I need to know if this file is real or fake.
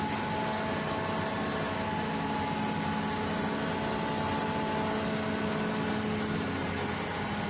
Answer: real